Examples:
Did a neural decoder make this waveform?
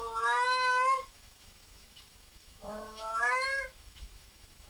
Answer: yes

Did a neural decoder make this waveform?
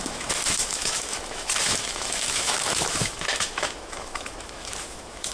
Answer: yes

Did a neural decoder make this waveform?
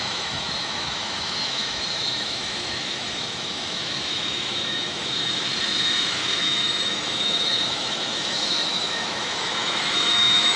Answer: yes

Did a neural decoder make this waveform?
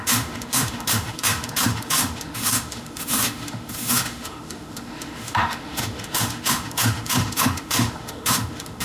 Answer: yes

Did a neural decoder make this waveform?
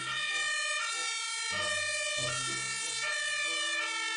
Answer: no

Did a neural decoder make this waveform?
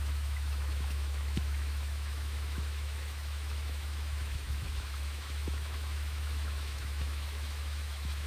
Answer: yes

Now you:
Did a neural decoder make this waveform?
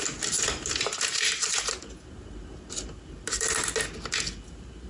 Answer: no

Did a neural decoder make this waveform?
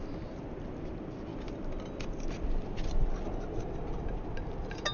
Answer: no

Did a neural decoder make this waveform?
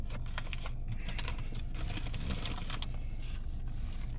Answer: no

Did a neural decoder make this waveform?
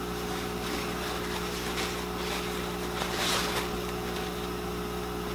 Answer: no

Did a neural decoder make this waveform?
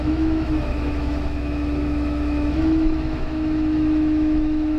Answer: yes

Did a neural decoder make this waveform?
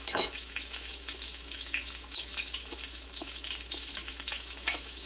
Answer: yes